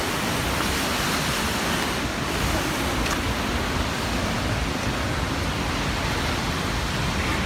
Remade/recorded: recorded